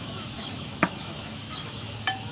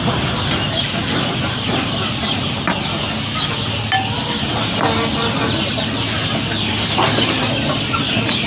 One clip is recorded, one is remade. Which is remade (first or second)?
first